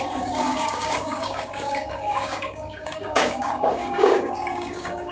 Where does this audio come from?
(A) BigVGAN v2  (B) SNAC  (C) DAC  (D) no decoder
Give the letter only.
C